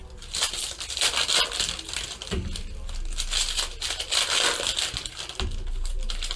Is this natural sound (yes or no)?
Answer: yes